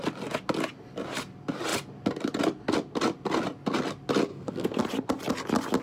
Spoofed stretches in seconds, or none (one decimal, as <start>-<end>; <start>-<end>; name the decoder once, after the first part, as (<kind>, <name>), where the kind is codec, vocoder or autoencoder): 4.3-4.8 (codec, SNAC)